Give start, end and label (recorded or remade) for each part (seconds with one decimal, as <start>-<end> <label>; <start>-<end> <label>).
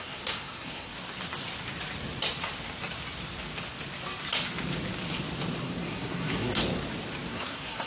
0.0-0.9 remade; 0.9-5.6 recorded; 5.6-6.6 remade; 6.6-7.3 recorded; 7.3-7.9 remade